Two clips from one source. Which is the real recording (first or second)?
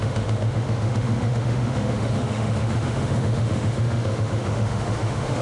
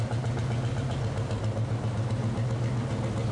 second